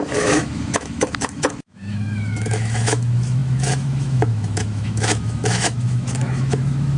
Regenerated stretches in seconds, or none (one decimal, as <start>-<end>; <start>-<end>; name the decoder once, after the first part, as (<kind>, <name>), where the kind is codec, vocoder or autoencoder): 0.0-7.0 (autoencoder, DAC-VAE)